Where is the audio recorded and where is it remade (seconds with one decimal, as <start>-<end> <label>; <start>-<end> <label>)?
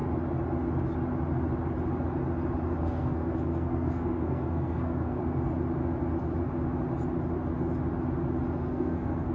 0.0-2.8 recorded; 2.8-5.2 remade; 5.2-8.6 recorded; 8.6-9.3 remade